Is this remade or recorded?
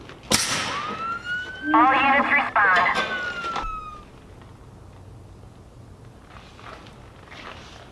recorded